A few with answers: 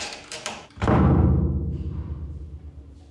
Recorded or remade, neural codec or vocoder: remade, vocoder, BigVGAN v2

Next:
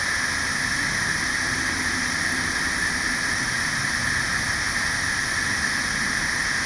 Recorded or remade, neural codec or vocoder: recorded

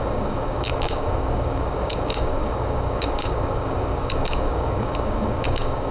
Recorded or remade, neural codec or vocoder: remade, codec, DAC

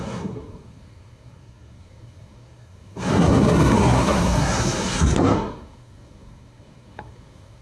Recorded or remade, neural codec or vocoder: remade, codec, SNAC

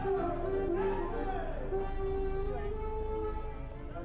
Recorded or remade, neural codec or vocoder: recorded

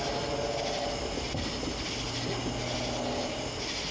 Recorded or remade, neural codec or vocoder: recorded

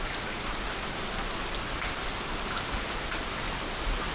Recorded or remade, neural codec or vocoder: recorded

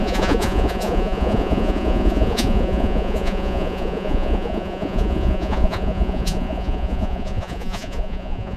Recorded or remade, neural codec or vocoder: remade, vocoder, Vocos